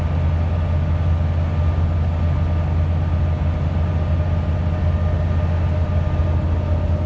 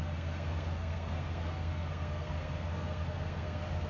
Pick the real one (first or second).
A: first